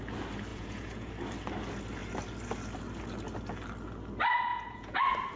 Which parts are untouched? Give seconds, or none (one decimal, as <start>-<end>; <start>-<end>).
0.0-0.5; 1.1-4.5; 5.0-5.4

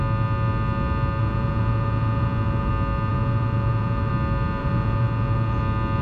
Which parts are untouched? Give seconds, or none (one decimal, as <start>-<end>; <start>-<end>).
0.0-1.2; 2.7-3.1; 4.1-4.6; 5.6-6.0

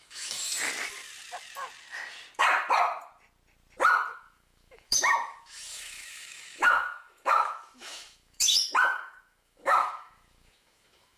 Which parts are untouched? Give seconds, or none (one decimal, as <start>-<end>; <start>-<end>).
0.5-4.1